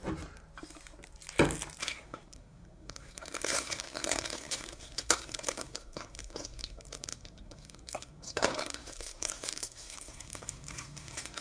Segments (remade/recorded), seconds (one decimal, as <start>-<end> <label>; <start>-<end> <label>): 0.0-1.8 recorded; 1.8-11.4 remade